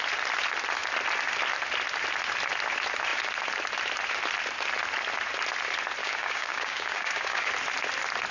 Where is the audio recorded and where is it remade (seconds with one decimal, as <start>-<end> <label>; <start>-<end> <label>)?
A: 0.0-6.0 recorded; 6.0-7.5 remade; 7.5-8.3 recorded